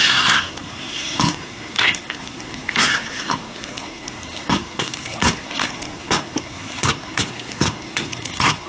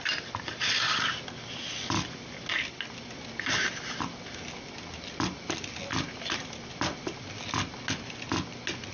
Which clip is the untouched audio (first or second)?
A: second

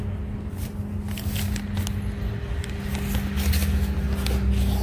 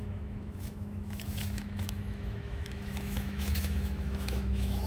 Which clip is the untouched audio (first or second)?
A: first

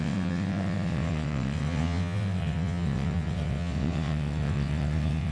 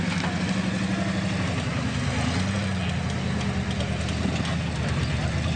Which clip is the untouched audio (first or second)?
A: second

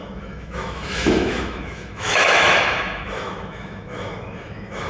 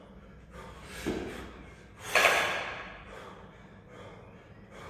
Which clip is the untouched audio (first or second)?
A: second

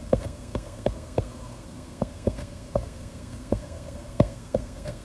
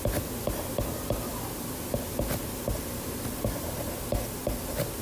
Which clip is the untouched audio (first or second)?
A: second